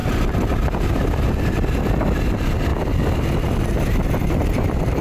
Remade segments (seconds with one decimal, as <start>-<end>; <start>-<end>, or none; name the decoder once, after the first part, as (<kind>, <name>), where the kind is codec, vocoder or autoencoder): 2.7-3.6 (vocoder, BigVGAN v2)